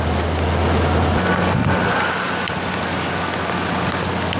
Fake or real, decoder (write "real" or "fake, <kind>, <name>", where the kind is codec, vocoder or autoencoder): real